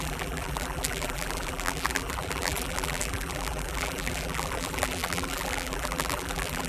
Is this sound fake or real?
fake